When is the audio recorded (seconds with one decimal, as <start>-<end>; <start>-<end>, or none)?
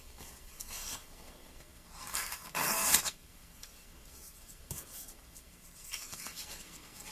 none